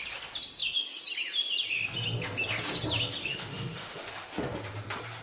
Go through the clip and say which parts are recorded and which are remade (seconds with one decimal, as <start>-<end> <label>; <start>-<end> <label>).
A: 0.0-3.2 recorded; 3.2-4.1 remade; 4.1-5.2 recorded